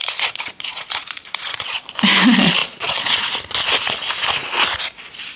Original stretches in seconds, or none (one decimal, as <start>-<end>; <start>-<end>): 1.8-2.6; 3.1-5.4